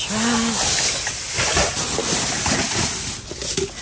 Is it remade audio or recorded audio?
recorded